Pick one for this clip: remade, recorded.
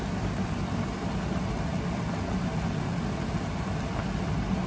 recorded